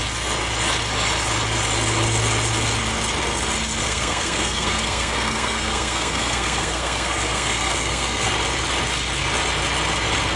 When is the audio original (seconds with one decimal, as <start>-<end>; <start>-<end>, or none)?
0.0-3.8; 8.3-10.4